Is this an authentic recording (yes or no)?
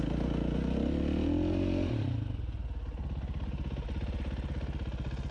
yes